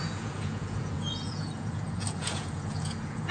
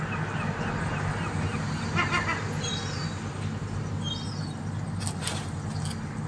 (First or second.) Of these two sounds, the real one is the second